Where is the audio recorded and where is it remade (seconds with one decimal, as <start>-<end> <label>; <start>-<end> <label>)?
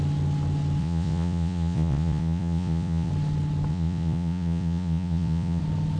0.0-0.8 recorded; 0.8-3.1 remade; 3.1-3.7 recorded; 3.7-5.6 remade; 5.6-6.0 recorded